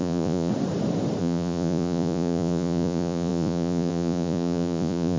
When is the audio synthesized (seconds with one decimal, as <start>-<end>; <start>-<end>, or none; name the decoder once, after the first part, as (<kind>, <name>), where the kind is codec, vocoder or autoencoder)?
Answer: 0.0-0.5 (vocoder, Vocos); 1.2-5.2